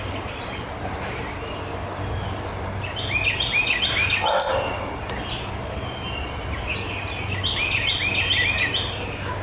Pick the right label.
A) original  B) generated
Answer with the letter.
A